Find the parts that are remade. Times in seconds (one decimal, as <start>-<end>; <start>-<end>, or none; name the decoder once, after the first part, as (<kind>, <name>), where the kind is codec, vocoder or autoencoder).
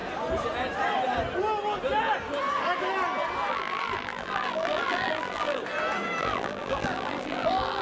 3.5-5.6 (vocoder, BigVGAN v2); 6.2-7.8